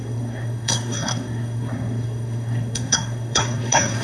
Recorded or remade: remade